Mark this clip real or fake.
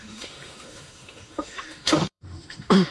fake